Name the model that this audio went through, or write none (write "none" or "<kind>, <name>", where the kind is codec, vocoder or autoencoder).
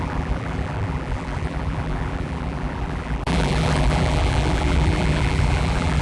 vocoder, BigVGAN v2